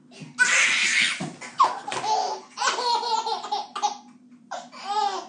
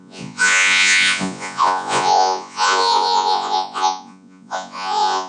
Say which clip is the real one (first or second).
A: first